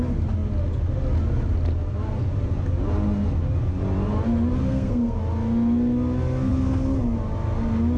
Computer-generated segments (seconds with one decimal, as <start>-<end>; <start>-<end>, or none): 4.6-5.2